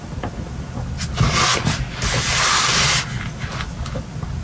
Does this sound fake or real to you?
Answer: real